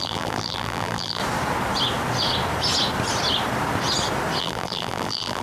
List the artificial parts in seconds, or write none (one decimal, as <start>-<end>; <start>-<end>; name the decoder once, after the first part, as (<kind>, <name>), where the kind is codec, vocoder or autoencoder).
0.0-1.2 (vocoder, BigVGAN v2); 4.4-5.4